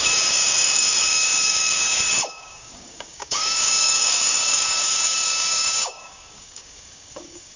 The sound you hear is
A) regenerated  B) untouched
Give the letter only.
A